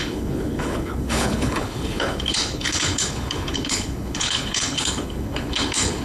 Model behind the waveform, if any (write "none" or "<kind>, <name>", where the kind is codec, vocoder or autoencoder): codec, HILCodec